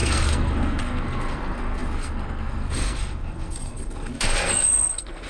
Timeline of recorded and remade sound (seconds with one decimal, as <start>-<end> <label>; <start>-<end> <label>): 0.0-5.3 remade